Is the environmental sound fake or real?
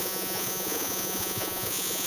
fake